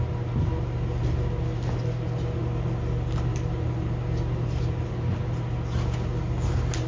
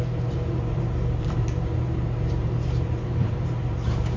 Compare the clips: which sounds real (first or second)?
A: first